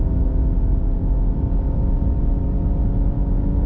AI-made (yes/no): no